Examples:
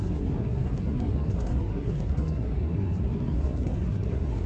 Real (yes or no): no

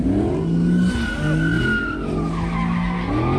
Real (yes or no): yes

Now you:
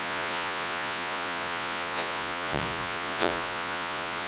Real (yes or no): no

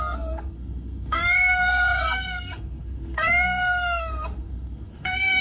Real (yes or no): no